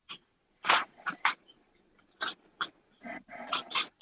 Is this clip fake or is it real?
fake